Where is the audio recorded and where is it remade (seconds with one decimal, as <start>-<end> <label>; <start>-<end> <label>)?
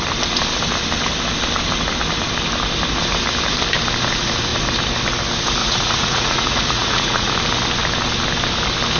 0.0-5.6 recorded; 5.6-7.3 remade; 7.3-9.0 recorded